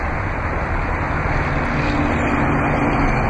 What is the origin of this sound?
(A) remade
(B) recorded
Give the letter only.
B